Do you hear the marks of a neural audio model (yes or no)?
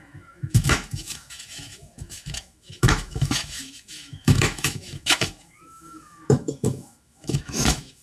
yes